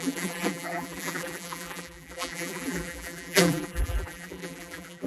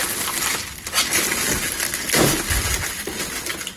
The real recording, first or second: second